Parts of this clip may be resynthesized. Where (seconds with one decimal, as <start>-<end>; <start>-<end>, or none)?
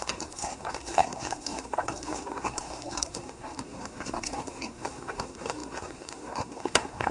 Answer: 0.0-7.1